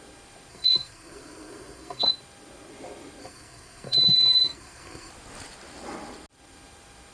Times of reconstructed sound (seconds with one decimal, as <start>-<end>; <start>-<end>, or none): 0.5-2.1; 3.2-5.1